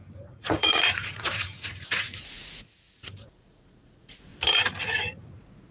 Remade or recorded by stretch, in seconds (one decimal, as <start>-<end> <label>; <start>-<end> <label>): 0.0-4.3 remade; 4.3-4.8 recorded; 4.8-5.7 remade